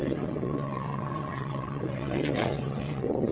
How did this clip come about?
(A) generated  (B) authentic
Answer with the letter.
A